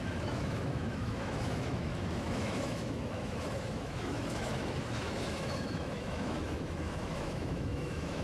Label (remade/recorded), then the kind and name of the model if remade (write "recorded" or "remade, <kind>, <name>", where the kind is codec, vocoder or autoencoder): remade, autoencoder, DAC-VAE